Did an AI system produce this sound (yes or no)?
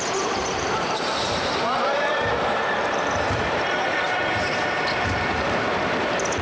yes